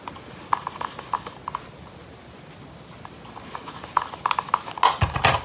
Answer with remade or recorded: recorded